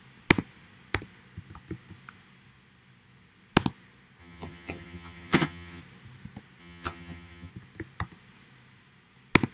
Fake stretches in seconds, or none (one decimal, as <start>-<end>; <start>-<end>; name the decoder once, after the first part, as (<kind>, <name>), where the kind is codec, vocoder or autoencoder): 4.2-5.8 (vocoder, HiFi-GAN); 6.6-7.5